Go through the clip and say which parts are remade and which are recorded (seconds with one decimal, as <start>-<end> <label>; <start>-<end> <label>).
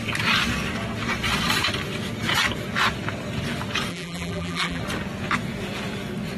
0.0-3.9 recorded; 3.9-4.8 remade; 4.8-6.4 recorded